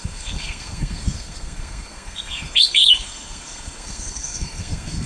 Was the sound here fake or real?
fake